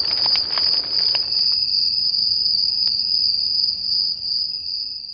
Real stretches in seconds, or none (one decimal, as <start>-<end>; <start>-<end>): 0.0-5.1